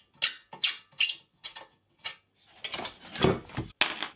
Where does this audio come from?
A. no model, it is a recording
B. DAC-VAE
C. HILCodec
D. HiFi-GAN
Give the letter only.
A